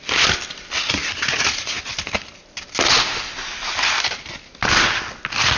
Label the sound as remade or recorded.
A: recorded